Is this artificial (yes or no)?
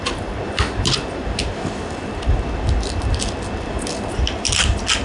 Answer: no